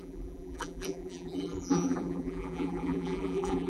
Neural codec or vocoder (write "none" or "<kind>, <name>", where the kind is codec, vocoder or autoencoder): vocoder, BigVGAN v2